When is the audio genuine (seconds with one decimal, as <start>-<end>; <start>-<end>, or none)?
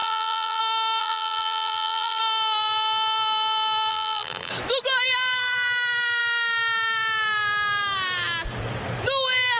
0.6-1.0; 2.2-3.9; 4.5-9.6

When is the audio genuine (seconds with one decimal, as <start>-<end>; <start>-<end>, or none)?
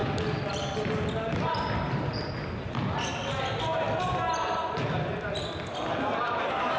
0.0-6.8